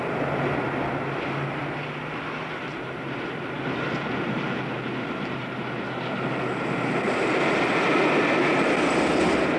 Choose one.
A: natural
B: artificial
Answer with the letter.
A